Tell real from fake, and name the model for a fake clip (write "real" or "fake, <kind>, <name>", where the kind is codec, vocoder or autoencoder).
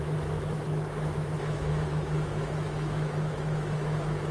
fake, autoencoder, DAC-VAE